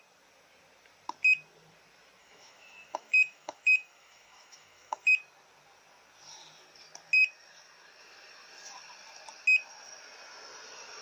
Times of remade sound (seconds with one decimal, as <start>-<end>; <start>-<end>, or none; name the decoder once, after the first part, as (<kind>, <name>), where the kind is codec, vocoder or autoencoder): 2.2-5.1 (autoencoder, DAC-VAE)